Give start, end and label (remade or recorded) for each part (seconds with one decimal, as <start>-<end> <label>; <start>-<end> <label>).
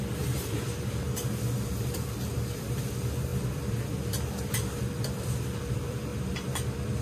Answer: 0.0-7.0 remade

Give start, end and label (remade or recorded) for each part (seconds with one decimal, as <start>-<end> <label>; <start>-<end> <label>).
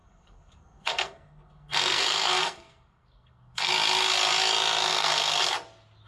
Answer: 0.0-3.7 remade; 3.7-4.9 recorded; 4.9-5.4 remade; 5.4-6.1 recorded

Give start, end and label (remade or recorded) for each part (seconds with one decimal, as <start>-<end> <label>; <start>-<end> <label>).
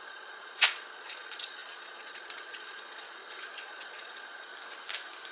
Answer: 0.0-4.5 remade; 4.5-5.3 recorded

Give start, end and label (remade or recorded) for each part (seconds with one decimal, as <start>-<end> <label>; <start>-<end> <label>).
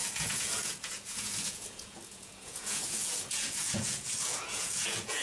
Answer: 0.0-5.2 remade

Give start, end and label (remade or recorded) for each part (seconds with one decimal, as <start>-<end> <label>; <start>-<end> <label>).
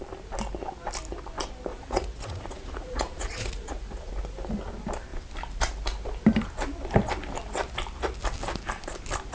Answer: 0.0-1.7 recorded; 1.7-4.1 remade; 4.1-9.3 recorded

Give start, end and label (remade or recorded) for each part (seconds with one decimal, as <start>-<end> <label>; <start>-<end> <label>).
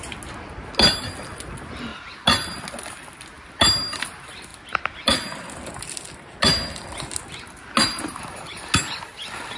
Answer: 0.0-9.6 recorded